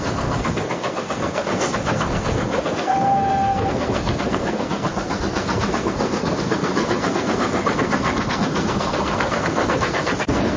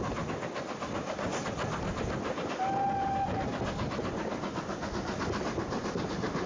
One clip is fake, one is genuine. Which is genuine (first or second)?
second